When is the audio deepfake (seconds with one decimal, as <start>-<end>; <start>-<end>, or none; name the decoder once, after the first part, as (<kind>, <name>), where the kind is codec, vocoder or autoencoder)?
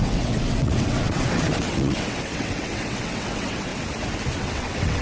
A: 0.0-3.7 (vocoder, WaveNeXt); 4.4-5.0